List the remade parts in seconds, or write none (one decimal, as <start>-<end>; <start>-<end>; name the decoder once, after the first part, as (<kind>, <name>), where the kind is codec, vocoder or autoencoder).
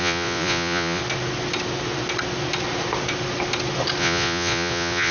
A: 0.0-1.0 (vocoder, Vocos); 4.0-5.1